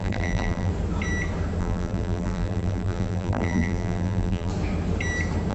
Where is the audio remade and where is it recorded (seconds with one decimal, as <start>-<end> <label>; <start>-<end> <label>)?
0.0-0.7 remade; 0.7-1.6 recorded; 1.6-4.5 remade; 4.5-5.5 recorded